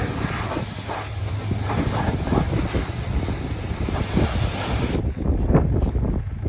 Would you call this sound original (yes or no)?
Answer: yes